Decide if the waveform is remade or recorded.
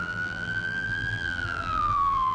remade